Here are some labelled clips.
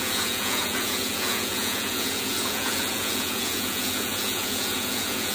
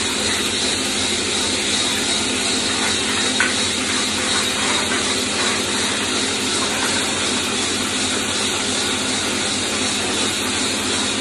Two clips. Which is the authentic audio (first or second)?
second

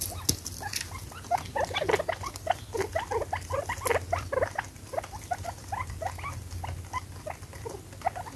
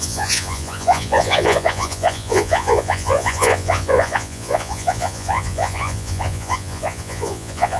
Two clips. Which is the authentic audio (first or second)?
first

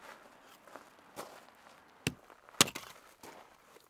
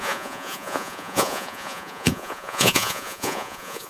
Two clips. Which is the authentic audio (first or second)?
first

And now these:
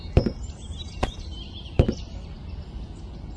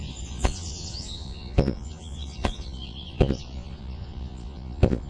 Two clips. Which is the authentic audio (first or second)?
first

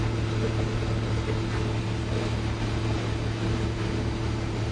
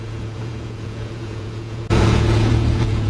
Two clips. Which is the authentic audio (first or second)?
first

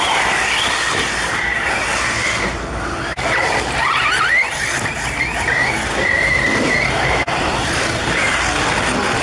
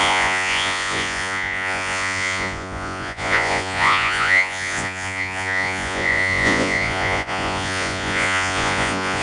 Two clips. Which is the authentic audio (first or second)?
first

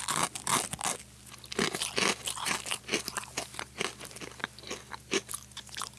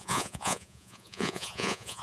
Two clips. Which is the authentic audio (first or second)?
first